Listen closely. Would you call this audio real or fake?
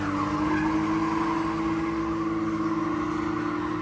real